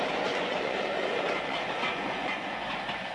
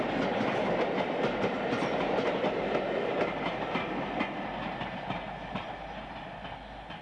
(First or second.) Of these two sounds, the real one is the second